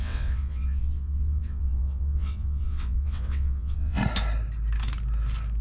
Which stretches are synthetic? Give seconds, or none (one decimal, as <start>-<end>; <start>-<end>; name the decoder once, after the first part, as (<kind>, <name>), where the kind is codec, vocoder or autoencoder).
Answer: 0.0-4.0 (vocoder, WaveNeXt)